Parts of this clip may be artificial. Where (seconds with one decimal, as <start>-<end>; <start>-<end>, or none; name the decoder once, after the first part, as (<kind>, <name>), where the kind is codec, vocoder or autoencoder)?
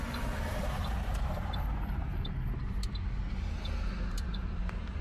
0.0-2.1 (vocoder, BigVGAN v2); 4.1-5.0